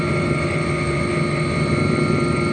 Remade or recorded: recorded